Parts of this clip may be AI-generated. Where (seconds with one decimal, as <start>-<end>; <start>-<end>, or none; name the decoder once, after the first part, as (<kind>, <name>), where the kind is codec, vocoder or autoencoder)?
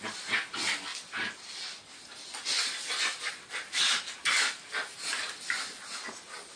0.9-3.3 (vocoder, BigVGAN v2)